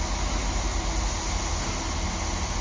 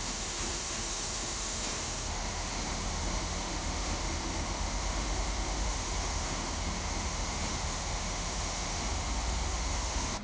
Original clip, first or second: first